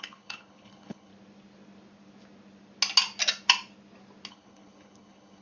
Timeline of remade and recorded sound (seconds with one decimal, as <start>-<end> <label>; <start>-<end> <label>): 0.0-1.1 remade; 1.1-4.3 recorded; 4.3-5.4 remade